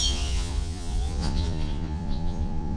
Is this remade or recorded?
remade